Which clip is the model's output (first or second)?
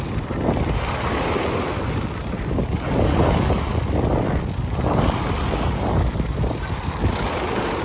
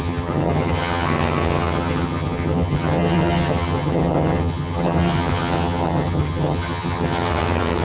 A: second